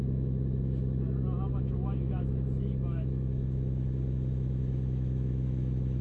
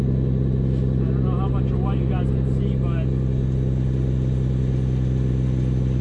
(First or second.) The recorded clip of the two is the second